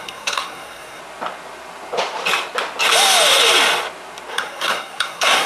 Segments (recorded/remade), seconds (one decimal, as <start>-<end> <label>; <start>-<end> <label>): 0.0-1.0 remade; 1.0-4.3 recorded; 4.3-5.5 remade